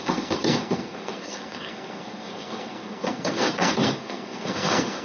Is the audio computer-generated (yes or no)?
yes